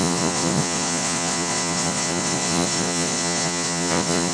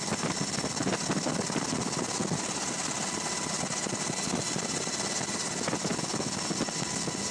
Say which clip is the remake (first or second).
first